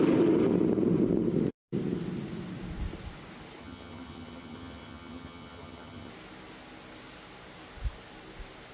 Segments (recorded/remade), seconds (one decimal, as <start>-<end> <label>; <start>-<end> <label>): 0.0-3.6 recorded; 3.6-6.1 remade; 6.1-8.7 recorded